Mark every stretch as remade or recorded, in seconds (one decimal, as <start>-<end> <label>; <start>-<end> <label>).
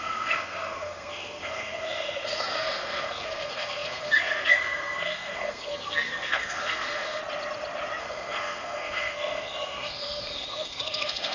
0.0-7.2 remade; 7.2-8.0 recorded; 8.0-11.3 remade